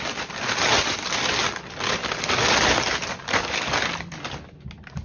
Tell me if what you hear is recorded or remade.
recorded